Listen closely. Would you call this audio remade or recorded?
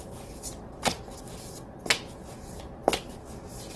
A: recorded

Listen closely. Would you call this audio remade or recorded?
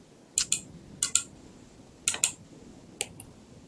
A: recorded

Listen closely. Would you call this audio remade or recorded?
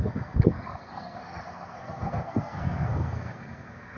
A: remade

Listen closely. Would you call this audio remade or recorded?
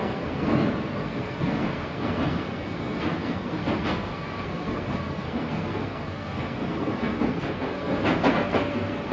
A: remade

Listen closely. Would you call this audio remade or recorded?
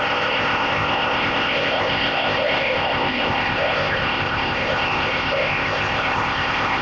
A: remade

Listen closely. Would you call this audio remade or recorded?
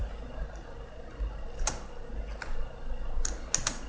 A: recorded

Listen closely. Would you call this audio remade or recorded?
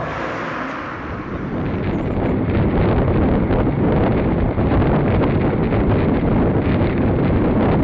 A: recorded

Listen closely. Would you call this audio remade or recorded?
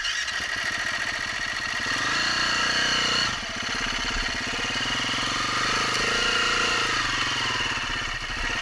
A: recorded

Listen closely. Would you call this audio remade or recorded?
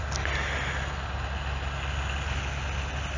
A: recorded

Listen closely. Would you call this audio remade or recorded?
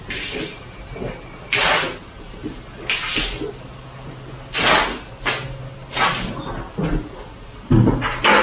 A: recorded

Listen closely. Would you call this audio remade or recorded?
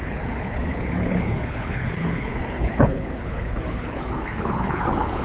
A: remade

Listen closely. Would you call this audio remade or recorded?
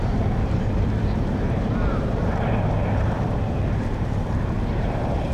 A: remade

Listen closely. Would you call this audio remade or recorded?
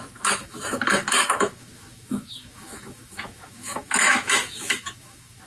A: remade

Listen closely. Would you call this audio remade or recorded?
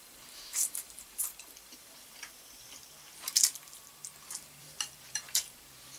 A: remade